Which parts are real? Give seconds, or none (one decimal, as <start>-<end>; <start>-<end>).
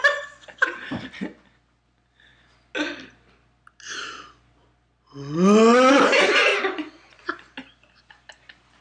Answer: 0.0-6.5; 7.2-8.8